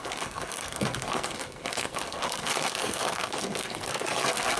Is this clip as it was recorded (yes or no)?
no